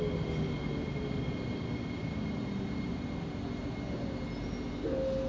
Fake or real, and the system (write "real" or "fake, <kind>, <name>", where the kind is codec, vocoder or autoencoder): real